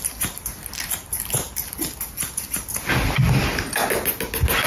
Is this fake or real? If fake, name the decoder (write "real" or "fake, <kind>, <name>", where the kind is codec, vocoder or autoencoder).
real